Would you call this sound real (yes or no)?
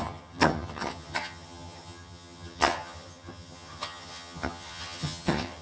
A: no